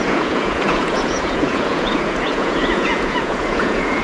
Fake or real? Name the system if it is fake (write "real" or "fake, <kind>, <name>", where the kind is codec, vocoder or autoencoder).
fake, vocoder, Vocos